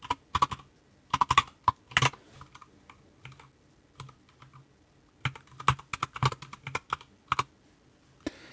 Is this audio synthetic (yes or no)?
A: no